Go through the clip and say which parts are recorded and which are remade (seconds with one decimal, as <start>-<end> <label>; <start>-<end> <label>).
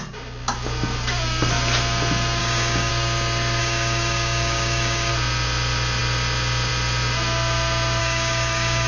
0.0-2.4 recorded; 2.4-2.9 remade; 2.9-3.6 recorded; 3.6-5.1 remade; 5.1-8.0 recorded; 8.0-8.9 remade